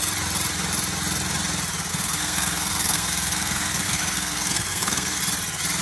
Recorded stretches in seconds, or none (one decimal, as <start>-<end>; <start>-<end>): 0.0-1.9; 5.2-5.8